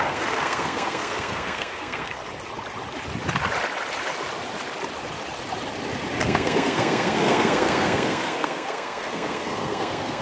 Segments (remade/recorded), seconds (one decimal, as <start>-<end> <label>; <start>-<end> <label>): 0.0-2.2 remade; 2.2-6.2 recorded; 6.2-10.2 remade